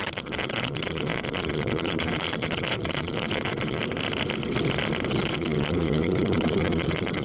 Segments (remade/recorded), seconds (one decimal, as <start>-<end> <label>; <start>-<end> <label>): 0.0-3.8 remade; 3.8-5.1 recorded; 5.1-7.2 remade